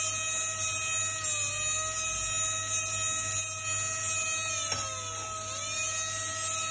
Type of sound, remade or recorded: recorded